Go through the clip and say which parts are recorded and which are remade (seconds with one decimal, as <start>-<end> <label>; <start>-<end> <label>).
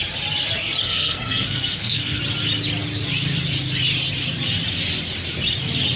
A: 0.0-0.8 recorded; 0.8-2.2 remade; 2.2-6.0 recorded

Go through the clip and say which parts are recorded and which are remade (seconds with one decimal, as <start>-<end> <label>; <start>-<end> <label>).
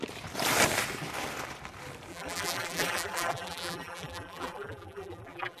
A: 0.0-2.1 recorded; 2.1-5.6 remade